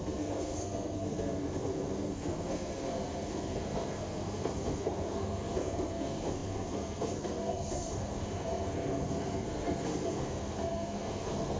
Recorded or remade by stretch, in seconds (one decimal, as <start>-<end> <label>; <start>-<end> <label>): 0.0-11.6 remade